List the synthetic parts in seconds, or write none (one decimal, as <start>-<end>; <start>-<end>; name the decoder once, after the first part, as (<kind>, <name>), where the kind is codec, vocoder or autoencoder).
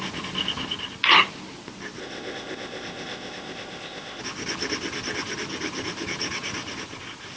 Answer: 2.0-4.2 (codec, ZipCodec)